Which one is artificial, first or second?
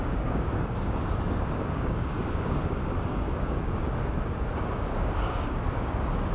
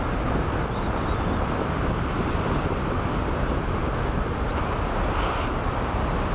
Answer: first